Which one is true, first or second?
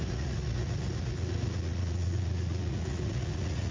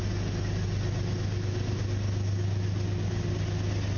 second